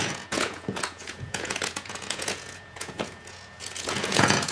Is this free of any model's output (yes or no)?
no